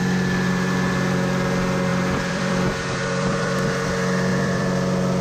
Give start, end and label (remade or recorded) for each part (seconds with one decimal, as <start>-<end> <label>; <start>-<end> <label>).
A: 0.0-1.9 recorded; 1.9-3.9 remade; 3.9-4.3 recorded; 4.3-5.2 remade

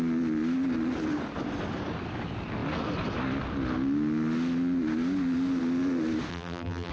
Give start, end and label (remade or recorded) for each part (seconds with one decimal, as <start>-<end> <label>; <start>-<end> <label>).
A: 0.0-6.3 recorded; 6.3-6.9 remade

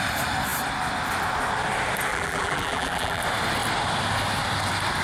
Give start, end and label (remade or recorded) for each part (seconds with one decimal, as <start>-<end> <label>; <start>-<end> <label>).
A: 0.0-2.1 recorded; 2.1-3.2 remade; 3.2-5.0 recorded

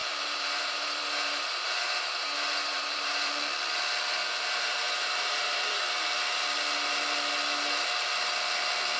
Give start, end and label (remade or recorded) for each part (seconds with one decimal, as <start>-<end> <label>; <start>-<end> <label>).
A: 0.0-3.3 remade; 3.3-4.2 recorded; 4.2-5.8 remade; 5.8-9.0 recorded

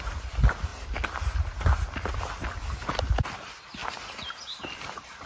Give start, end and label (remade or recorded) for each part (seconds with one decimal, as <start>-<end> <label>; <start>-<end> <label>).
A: 0.0-5.3 recorded

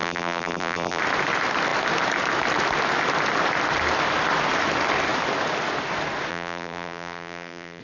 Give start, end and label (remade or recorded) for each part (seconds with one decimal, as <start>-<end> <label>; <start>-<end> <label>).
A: 0.0-1.0 remade; 1.0-6.3 recorded; 6.3-7.8 remade

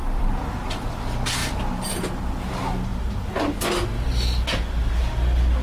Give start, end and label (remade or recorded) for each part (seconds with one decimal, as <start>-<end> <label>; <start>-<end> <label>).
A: 0.0-0.9 remade; 0.9-1.4 recorded; 1.4-2.5 remade; 2.5-5.6 recorded

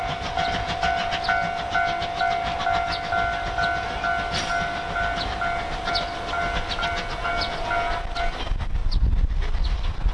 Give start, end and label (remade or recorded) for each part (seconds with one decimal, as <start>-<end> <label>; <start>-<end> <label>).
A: 0.0-10.1 recorded